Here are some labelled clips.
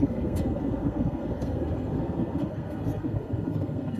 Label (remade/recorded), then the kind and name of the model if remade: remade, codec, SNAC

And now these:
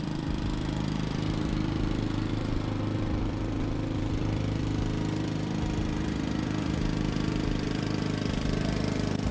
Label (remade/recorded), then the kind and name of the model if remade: remade, vocoder, BigVGAN v2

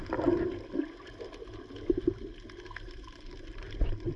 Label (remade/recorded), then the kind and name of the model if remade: recorded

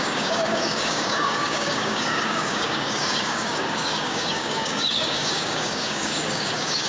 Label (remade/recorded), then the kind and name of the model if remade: remade, codec, DAC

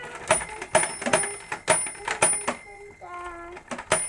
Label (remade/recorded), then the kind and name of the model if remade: recorded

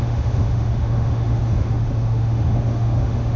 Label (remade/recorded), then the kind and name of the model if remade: remade, autoencoder, DAC-VAE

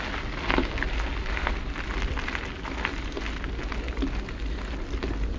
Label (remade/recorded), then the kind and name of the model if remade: recorded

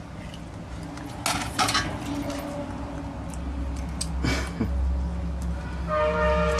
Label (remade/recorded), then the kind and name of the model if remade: recorded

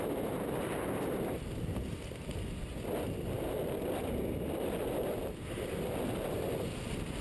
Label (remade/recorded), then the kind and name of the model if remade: recorded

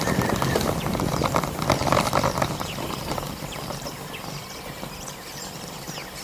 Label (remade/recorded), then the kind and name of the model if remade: remade, vocoder, BigVGAN v2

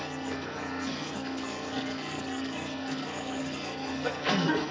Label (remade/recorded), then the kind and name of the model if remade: remade, codec, SNAC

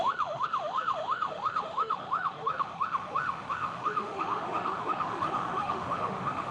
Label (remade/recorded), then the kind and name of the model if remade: remade, autoencoder, DAC-VAE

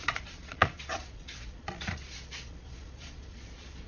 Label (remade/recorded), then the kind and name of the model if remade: remade, vocoder, Vocos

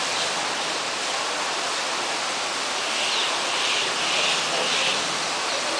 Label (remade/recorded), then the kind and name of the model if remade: recorded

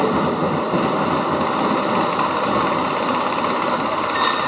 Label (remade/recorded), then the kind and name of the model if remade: recorded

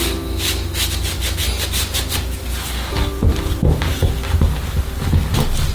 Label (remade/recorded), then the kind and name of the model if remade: recorded